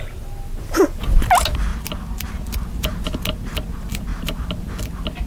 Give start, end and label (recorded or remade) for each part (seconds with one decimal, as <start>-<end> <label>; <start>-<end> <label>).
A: 0.0-5.3 recorded